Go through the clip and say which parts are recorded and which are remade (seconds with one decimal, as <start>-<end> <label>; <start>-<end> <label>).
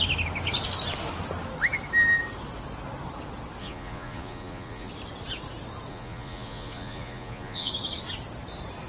0.0-3.6 recorded; 3.6-4.9 remade; 4.9-5.9 recorded; 5.9-7.7 remade; 7.7-8.9 recorded